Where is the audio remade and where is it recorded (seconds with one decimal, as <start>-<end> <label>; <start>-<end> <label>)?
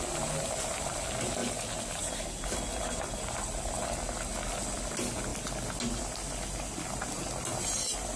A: 0.0-8.2 recorded